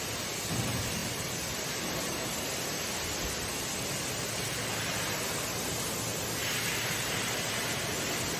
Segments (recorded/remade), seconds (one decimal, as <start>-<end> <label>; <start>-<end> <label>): 0.0-1.0 recorded; 1.0-2.0 remade; 2.0-8.4 recorded